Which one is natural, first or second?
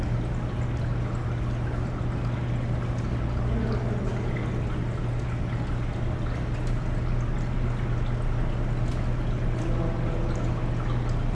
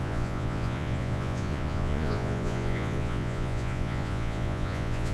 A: first